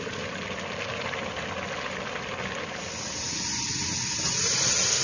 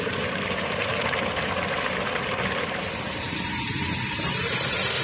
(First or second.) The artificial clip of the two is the second